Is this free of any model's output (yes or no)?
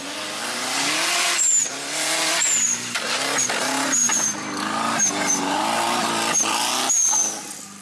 yes